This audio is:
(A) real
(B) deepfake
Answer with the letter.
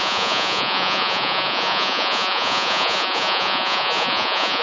B